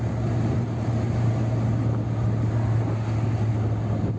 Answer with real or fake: real